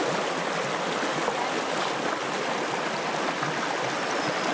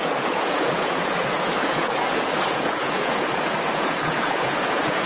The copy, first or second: second